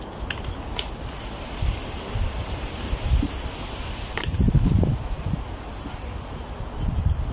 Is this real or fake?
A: real